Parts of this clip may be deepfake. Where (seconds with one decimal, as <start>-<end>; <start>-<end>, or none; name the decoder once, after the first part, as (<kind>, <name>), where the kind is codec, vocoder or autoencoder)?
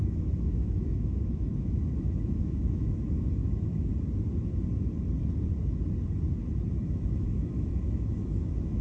0.0-3.9 (autoencoder, DAC-VAE); 6.7-8.8